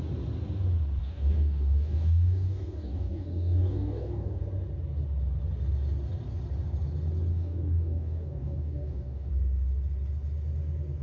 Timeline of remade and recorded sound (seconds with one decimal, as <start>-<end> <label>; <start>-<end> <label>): 0.0-1.0 recorded; 1.0-4.4 remade; 4.4-7.3 recorded; 7.3-9.3 remade; 9.3-11.0 recorded